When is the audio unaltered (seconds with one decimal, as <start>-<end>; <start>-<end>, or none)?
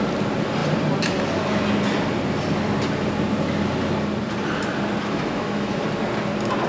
0.0-5.0; 5.7-6.7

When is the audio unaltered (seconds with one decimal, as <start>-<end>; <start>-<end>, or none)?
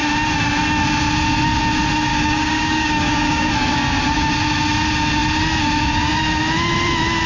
0.0-2.1; 3.5-7.3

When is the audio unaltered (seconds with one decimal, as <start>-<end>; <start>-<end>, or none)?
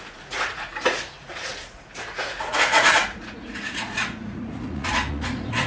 none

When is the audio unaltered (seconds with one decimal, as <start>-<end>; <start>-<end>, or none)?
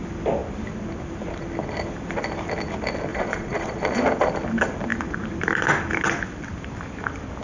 0.0-3.1; 4.0-7.4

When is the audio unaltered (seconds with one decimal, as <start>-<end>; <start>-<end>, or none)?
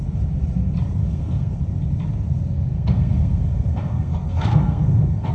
0.0-1.0; 1.6-2.7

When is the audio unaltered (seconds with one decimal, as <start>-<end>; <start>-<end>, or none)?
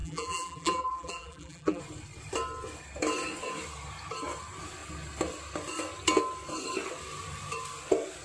1.8-8.2